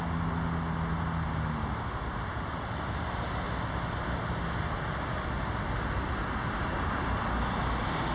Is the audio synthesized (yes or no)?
no